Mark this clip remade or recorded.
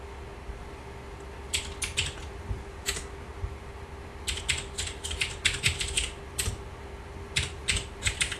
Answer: recorded